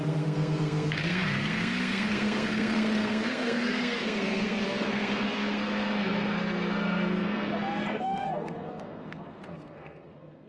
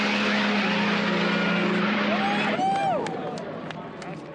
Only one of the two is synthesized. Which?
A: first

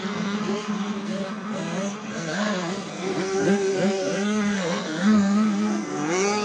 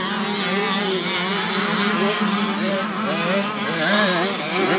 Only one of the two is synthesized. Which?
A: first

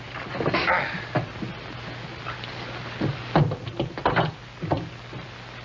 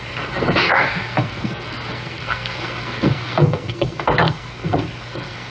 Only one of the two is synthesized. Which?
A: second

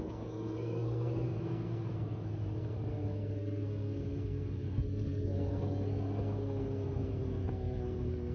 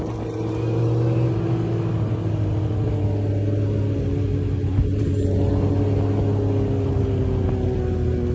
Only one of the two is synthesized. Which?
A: first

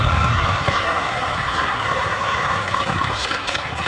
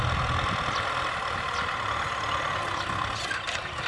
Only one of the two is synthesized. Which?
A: first